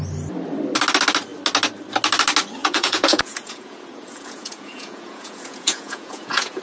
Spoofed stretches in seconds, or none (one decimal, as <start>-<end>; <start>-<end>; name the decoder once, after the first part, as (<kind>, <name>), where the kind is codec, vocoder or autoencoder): 2.6-6.6 (vocoder, Vocos)